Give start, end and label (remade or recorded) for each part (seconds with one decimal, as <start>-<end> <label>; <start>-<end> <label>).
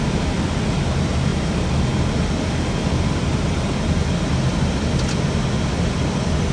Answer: 0.0-6.5 recorded